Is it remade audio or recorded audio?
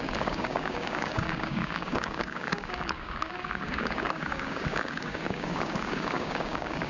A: remade